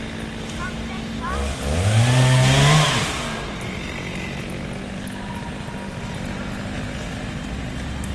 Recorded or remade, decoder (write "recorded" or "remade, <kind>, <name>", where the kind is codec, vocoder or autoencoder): recorded